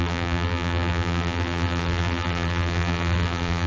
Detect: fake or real fake